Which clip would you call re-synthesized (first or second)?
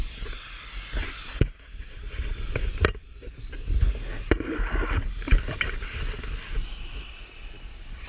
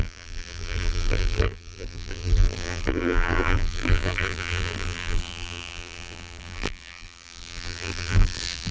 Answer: second